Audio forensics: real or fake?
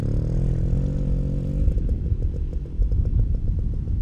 real